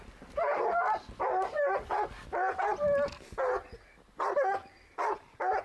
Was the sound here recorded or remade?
recorded